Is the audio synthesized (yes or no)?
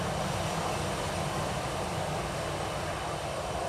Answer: no